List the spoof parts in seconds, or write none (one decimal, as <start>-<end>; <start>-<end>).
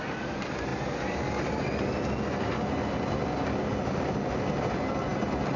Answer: none